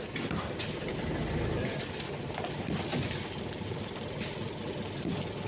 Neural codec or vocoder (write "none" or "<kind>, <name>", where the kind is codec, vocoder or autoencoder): none